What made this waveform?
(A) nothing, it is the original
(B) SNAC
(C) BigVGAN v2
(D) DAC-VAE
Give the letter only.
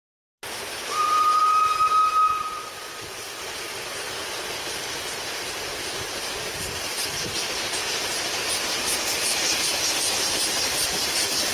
A